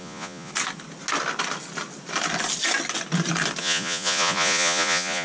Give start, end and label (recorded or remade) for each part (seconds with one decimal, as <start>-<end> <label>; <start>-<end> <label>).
0.0-0.5 remade; 0.5-3.6 recorded; 3.6-5.2 remade

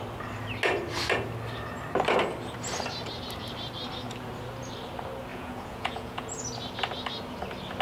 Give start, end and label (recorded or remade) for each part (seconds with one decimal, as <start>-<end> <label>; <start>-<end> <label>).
0.0-5.3 recorded; 5.3-6.4 remade; 6.4-7.8 recorded

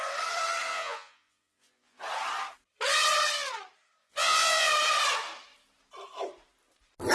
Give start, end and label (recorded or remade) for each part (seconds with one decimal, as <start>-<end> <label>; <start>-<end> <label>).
0.0-0.7 recorded; 0.7-2.0 remade; 2.0-4.0 recorded; 4.0-4.7 remade; 4.7-7.1 recorded

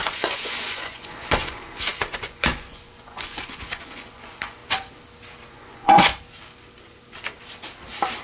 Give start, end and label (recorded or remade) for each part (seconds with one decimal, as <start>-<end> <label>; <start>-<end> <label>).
0.0-4.6 remade; 4.6-5.5 recorded; 5.5-6.1 remade; 6.1-8.2 recorded

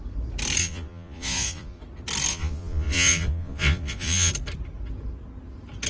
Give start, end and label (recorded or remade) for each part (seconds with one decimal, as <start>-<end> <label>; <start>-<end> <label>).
0.0-0.6 recorded; 0.6-1.8 remade; 1.8-2.3 recorded; 2.3-4.3 remade; 4.3-5.9 recorded